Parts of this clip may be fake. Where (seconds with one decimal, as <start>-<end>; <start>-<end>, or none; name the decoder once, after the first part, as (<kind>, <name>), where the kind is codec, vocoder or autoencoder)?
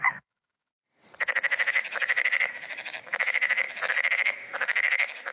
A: 0.0-0.8 (codec, DAC); 1.8-5.3